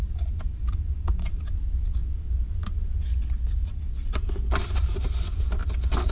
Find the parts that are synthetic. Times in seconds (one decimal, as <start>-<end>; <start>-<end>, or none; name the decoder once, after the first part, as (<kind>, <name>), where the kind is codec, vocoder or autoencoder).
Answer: 0.0-1.4 (vocoder, BigVGAN v2); 3.6-4.2